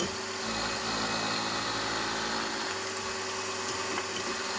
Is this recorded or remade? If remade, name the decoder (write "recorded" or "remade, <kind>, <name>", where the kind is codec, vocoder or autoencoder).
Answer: recorded